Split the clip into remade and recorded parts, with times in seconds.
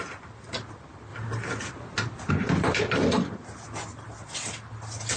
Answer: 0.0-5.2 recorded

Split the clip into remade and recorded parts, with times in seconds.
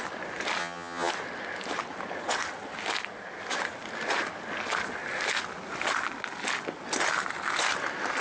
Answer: 0.0-0.6 recorded; 0.6-1.1 remade; 1.1-8.2 recorded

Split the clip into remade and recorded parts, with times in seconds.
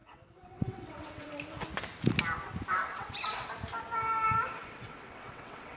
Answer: 0.0-1.3 remade; 1.3-2.8 recorded; 2.8-3.5 remade; 3.5-4.6 recorded; 4.6-5.8 remade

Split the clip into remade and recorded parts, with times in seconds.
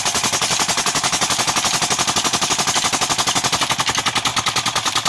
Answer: 0.0-4.3 recorded; 4.3-5.1 remade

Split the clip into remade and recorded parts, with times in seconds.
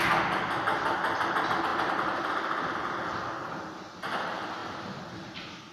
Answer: 0.0-5.7 recorded